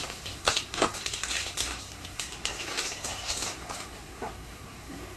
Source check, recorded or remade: remade